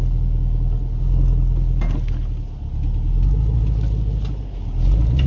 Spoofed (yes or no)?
no